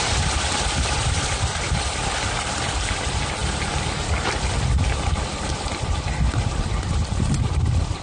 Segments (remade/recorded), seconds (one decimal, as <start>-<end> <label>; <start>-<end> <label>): 0.0-8.0 recorded